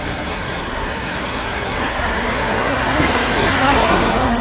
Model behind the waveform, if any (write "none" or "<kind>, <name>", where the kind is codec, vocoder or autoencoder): codec, SNAC